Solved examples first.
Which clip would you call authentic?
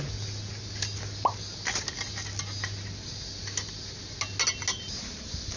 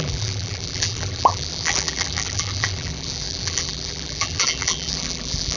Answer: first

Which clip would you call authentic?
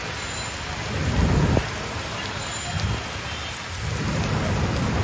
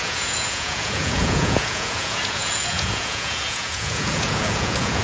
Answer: first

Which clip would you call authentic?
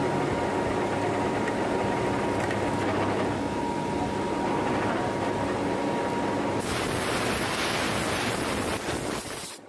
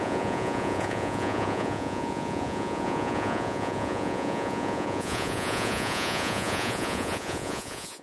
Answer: first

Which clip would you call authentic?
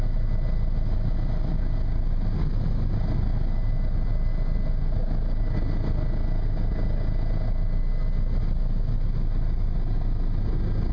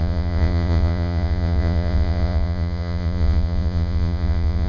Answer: first